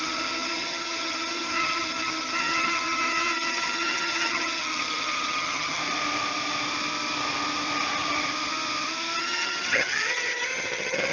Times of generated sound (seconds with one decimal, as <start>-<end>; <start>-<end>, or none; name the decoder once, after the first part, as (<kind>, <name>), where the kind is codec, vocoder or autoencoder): 0.0-5.8 (vocoder, HiFi-GAN); 9.2-11.1